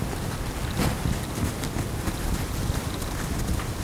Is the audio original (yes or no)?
yes